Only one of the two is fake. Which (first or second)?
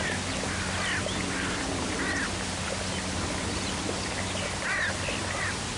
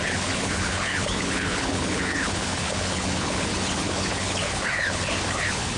second